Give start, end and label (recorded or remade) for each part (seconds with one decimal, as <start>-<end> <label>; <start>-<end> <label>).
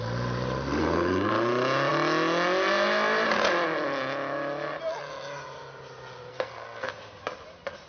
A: 0.0-0.8 recorded; 0.8-1.3 remade; 1.3-6.3 recorded; 6.3-6.9 remade; 6.9-7.9 recorded